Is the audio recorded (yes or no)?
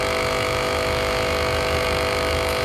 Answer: no